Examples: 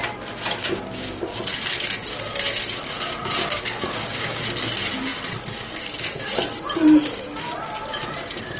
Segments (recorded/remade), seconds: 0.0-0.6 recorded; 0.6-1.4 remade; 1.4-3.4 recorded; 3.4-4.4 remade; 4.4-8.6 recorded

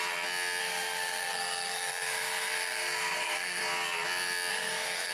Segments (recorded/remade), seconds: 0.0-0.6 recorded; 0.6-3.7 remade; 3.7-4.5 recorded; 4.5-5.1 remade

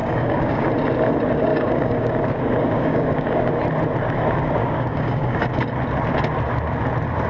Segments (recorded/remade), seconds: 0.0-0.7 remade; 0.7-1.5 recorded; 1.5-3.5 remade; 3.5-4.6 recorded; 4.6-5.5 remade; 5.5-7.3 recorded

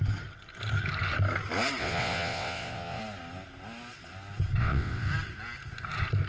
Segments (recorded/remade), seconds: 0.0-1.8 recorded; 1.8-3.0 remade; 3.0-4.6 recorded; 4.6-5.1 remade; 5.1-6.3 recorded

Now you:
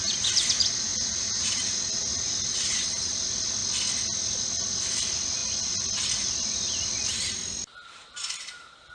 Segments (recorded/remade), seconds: 0.0-2.5 recorded; 2.5-3.1 remade; 3.1-8.9 recorded

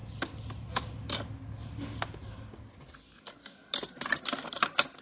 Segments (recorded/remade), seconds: 0.0-5.0 recorded

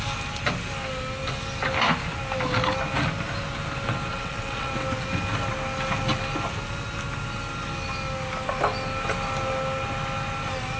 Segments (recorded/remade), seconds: 0.0-4.1 recorded; 4.1-4.7 remade; 4.7-10.8 recorded